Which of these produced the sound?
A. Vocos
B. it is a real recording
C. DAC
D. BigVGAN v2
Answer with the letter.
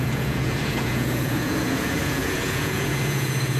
A